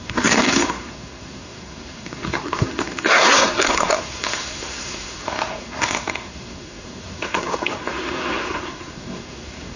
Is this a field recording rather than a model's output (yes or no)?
no